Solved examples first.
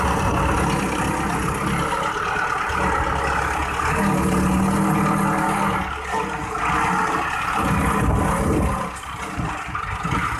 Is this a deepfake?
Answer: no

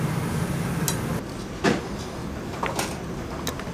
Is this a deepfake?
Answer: no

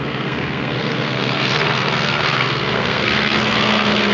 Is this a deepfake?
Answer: yes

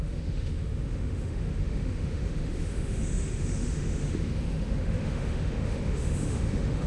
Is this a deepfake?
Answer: yes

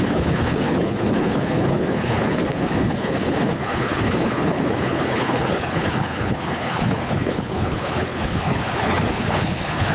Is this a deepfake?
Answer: yes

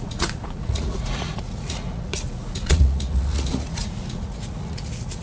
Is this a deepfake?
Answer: yes